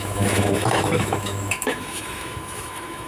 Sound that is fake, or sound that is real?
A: fake